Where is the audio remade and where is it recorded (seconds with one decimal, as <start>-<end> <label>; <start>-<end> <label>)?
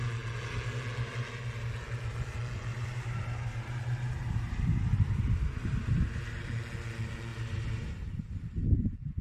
0.0-2.7 recorded; 2.7-6.2 remade; 6.2-7.3 recorded; 7.3-9.2 remade